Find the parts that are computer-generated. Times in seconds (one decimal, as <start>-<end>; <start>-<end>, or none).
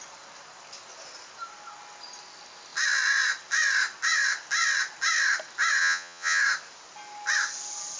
5.8-6.4